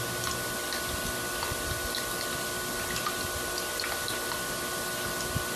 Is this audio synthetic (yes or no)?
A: no